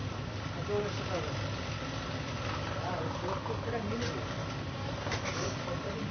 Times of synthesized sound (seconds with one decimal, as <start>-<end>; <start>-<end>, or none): 4.4-6.1